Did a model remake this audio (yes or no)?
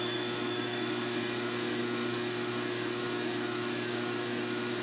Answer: yes